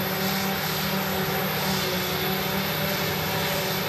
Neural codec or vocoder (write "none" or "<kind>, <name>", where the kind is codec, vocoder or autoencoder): none